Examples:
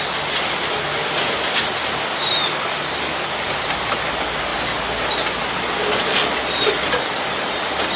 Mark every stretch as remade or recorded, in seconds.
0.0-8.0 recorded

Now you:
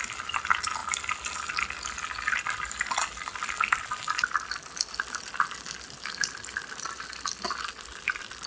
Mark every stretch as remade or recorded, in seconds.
0.0-8.5 recorded